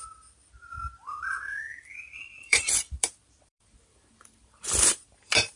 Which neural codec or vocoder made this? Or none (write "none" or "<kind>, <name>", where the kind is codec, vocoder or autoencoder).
vocoder, BigVGAN v2